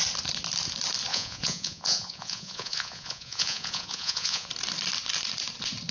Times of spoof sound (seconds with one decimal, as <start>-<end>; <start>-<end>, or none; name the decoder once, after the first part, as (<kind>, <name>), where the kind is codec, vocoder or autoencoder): 1.1-4.5 (vocoder, Vocos)